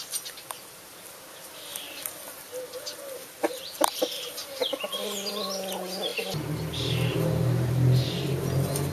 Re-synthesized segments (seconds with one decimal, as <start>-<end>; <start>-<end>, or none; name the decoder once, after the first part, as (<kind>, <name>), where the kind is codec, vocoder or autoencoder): none